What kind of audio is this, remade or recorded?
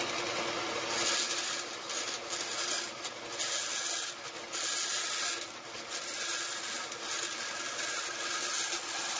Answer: recorded